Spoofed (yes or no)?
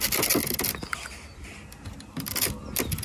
no